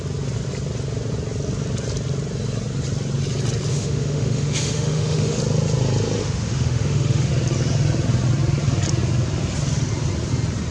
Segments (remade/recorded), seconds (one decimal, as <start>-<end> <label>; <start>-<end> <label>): 0.0-3.7 recorded; 3.7-5.4 remade; 5.4-6.2 recorded; 6.2-7.3 remade; 7.3-10.7 recorded

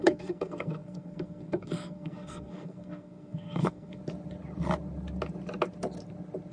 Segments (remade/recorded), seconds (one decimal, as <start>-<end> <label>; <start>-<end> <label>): 0.0-4.0 remade; 4.0-6.5 recorded

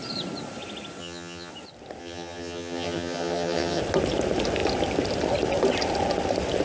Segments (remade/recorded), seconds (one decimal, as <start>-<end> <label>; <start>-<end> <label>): 0.0-1.0 recorded; 1.0-1.5 remade; 1.5-2.0 recorded; 2.0-3.8 remade; 3.8-6.6 recorded